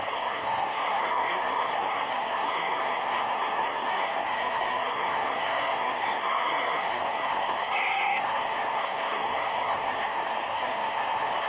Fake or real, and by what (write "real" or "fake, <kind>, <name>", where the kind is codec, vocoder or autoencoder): fake, codec, SNAC